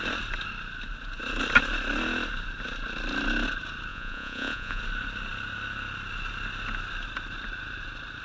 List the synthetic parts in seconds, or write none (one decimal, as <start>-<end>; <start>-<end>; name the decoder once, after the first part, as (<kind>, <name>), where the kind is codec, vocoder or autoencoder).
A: 3.9-4.8 (vocoder, Vocos)